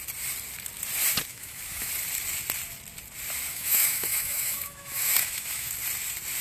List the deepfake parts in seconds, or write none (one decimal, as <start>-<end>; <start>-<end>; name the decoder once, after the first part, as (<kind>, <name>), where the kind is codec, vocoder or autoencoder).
1.3-1.9 (autoencoder, DAC-VAE); 3.5-5.7